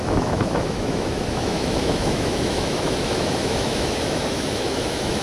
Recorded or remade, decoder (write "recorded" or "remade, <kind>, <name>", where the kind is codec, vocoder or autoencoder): remade, autoencoder, DAC-VAE